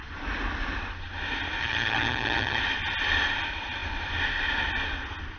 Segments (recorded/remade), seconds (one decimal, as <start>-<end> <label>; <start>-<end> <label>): 0.0-1.6 recorded; 1.6-2.6 remade; 2.6-5.4 recorded